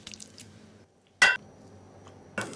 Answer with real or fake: real